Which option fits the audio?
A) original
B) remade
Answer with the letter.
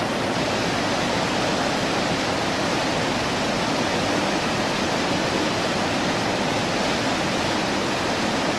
A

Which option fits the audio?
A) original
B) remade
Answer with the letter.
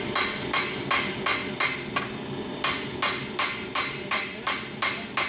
A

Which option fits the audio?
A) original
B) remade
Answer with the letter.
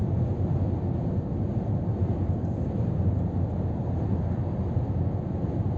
A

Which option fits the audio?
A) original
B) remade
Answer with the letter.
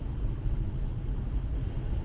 A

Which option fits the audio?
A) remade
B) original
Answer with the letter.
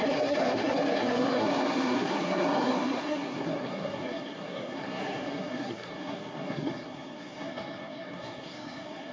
A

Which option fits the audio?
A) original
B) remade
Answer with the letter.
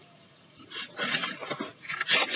A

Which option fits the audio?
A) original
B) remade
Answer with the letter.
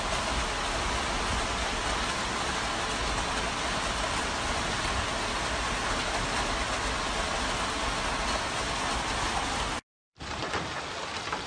A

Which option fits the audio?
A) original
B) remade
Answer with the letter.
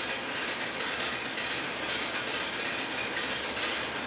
A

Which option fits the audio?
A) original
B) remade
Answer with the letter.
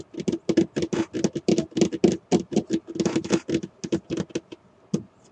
A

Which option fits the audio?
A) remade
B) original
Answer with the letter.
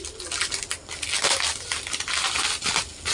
B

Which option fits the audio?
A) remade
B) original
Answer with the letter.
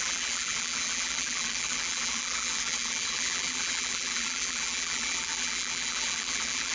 A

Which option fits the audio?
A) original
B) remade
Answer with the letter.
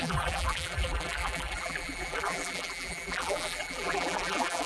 B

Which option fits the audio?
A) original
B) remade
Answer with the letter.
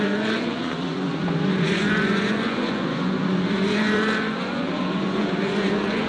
B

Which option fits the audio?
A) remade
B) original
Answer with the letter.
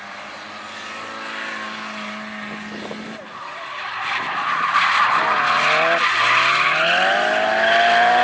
B